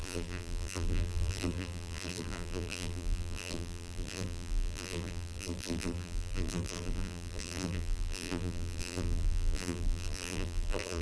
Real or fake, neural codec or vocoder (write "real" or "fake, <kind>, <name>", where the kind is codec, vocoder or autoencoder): fake, vocoder, BigVGAN v2